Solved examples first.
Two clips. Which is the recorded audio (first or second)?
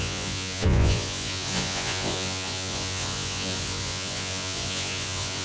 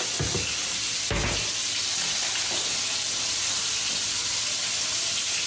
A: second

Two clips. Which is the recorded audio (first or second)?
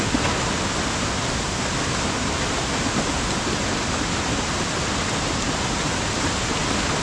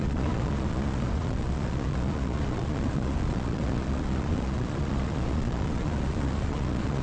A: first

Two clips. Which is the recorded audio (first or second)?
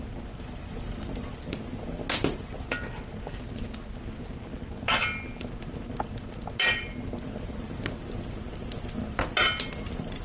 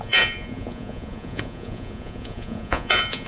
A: first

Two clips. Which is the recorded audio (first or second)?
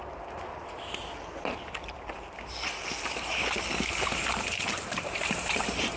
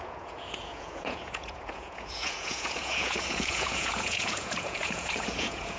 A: first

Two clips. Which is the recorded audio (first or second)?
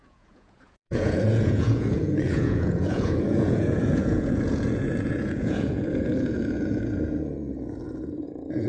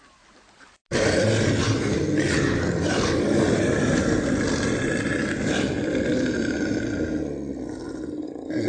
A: second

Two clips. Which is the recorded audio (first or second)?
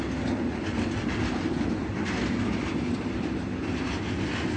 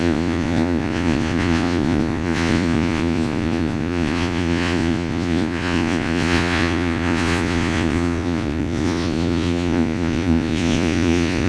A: first